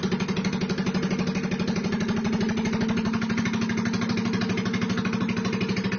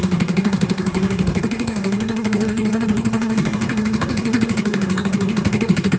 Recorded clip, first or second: first